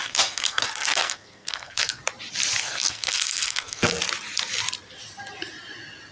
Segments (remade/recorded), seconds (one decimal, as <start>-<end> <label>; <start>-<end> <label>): 0.0-2.0 remade; 2.0-2.6 recorded; 2.6-4.0 remade; 4.0-6.1 recorded

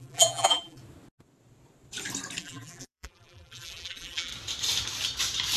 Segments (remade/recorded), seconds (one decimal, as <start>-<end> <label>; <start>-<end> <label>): 0.0-0.8 remade; 0.8-2.4 recorded; 2.4-4.3 remade; 4.3-5.6 recorded

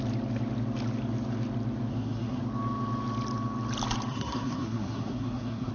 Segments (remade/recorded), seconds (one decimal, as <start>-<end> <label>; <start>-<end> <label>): 0.0-1.9 recorded; 1.9-2.4 remade; 2.4-4.1 recorded; 4.1-5.7 remade

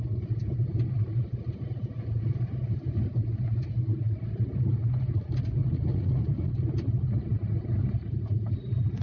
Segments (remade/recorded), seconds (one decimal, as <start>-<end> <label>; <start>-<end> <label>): 0.0-5.6 recorded; 5.6-6.5 remade; 6.5-9.0 recorded

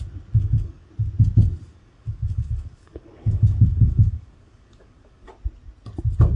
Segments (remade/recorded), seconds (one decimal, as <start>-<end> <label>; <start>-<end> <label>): 0.0-0.4 recorded; 0.4-0.9 remade; 0.9-1.7 recorded; 1.7-5.3 remade; 5.3-6.3 recorded

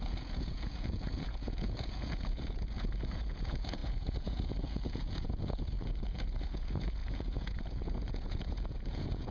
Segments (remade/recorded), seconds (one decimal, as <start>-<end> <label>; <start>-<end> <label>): 0.0-9.3 remade

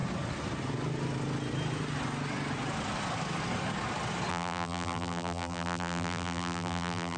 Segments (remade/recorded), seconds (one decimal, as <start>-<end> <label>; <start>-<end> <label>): 0.0-4.3 recorded; 4.3-7.2 remade

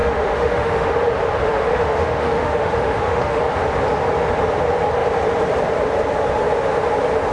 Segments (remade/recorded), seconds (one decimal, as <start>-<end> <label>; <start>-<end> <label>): 0.0-0.9 remade; 0.9-1.4 recorded; 1.4-3.4 remade; 3.4-7.3 recorded